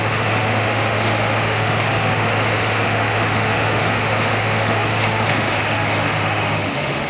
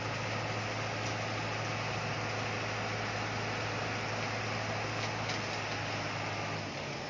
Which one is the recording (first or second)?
second